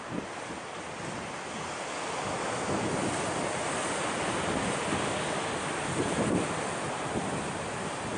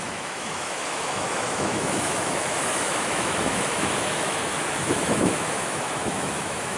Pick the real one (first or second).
first